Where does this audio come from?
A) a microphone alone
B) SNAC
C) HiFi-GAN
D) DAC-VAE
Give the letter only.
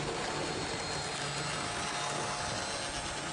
A